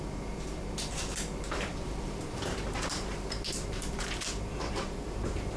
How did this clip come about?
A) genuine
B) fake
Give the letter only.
B